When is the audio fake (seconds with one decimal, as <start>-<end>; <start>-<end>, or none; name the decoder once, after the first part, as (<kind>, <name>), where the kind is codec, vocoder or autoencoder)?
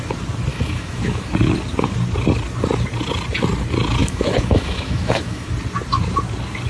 0.5-1.3 (autoencoder, DAC-VAE); 4.0-5.5